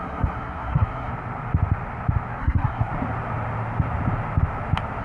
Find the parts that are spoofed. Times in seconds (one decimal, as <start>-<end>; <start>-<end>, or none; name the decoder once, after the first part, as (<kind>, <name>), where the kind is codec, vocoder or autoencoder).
0.0-1.1 (codec, SNAC); 2.4-2.9